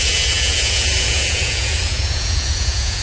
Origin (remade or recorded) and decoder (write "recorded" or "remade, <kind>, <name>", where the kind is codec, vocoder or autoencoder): remade, vocoder, Vocos